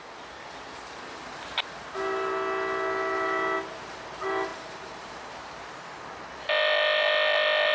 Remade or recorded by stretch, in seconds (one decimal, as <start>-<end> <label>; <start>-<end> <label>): 0.0-4.5 recorded; 4.5-5.3 remade; 5.3-7.7 recorded